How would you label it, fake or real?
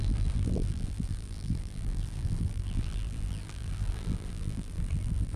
fake